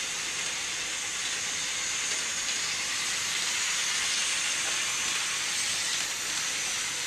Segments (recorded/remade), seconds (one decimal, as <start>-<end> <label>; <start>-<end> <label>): 0.0-7.1 recorded